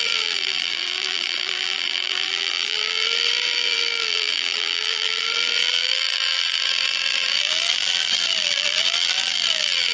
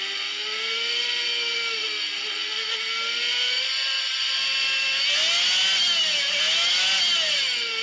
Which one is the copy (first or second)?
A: first